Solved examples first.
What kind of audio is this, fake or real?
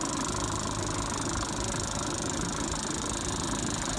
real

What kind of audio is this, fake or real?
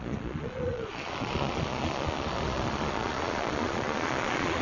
fake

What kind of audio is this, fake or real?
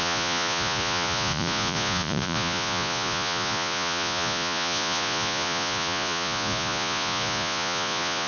fake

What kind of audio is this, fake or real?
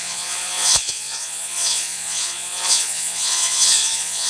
fake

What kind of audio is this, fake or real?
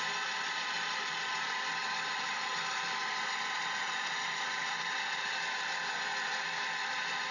real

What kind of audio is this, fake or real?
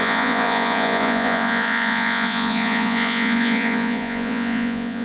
fake